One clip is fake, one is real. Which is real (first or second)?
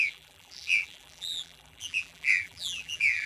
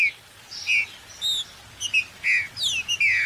second